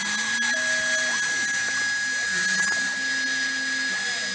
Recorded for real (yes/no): yes